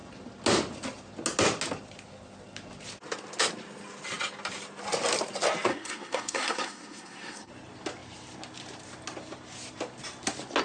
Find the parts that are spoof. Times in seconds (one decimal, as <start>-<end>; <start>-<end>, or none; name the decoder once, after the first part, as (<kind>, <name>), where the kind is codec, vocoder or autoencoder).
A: 5.7-7.5 (codec, SNAC)